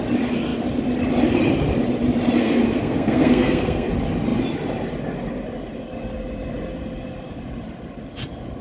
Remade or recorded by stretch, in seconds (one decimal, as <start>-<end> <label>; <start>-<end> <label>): 0.0-2.4 recorded; 2.4-3.9 remade; 3.9-8.6 recorded